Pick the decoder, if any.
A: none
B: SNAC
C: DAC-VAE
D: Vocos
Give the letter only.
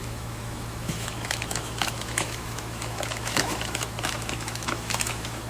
C